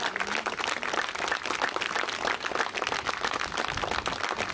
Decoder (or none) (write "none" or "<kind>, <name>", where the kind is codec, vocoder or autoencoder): none